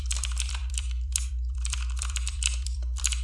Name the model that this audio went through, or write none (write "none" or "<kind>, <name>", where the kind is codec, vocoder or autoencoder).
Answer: vocoder, BigVGAN v2